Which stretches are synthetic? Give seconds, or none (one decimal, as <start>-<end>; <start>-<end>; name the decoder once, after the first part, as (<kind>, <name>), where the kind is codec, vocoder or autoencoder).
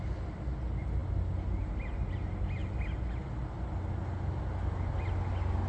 none